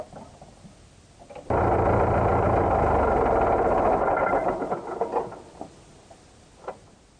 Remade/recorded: recorded